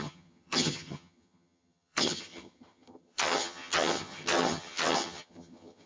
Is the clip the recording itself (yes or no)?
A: no